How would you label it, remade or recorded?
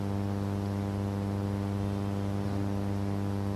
recorded